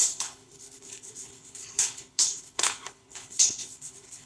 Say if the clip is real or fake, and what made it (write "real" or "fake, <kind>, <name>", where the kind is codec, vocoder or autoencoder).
fake, codec, HILCodec